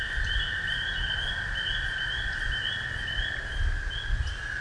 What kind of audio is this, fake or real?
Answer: real